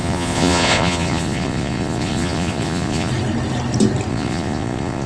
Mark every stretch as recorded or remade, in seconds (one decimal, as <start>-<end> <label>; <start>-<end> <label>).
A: 0.0-3.1 remade; 3.1-4.1 recorded; 4.1-5.1 remade